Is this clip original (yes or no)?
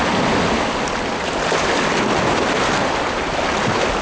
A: yes